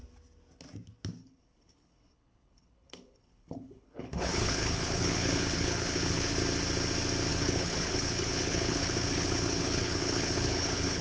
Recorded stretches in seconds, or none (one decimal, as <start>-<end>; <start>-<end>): 0.0-1.2; 6.4-7.3